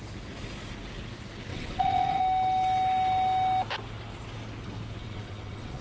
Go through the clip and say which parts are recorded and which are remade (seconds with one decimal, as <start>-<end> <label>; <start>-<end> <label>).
0.0-1.5 recorded; 1.5-2.2 remade; 2.2-5.0 recorded; 5.0-5.8 remade